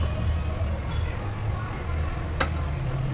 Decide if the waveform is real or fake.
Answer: real